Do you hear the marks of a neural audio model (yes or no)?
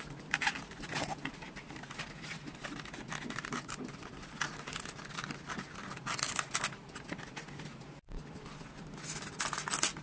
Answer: no